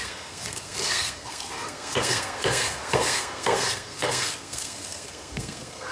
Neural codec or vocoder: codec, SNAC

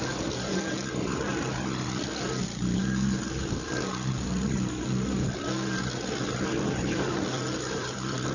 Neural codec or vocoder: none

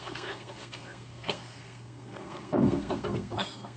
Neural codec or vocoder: codec, SNAC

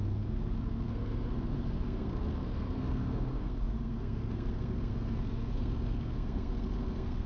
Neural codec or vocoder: codec, SNAC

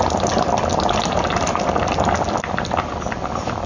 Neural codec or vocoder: none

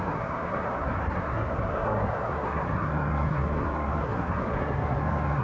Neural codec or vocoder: codec, SNAC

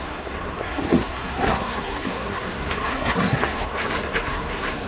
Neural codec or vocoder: codec, SNAC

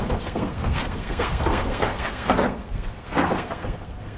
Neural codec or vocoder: codec, SNAC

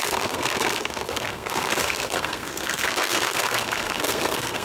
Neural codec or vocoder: codec, SNAC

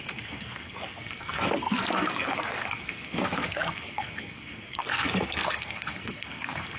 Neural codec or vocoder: codec, SNAC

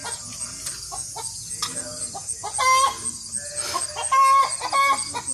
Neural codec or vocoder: none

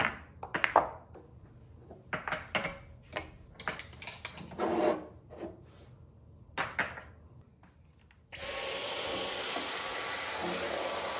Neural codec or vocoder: none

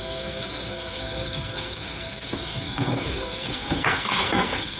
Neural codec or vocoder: codec, SNAC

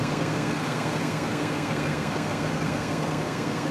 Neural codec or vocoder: codec, SNAC